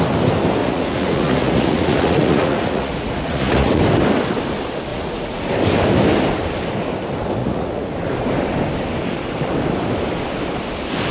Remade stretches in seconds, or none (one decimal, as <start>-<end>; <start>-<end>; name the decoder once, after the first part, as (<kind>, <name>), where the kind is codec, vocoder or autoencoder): 0.6-3.8 (vocoder, Vocos); 4.9-5.5; 7.4-7.9